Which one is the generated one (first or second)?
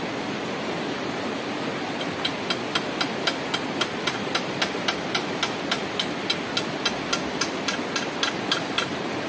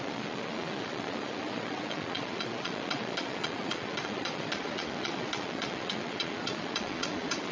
second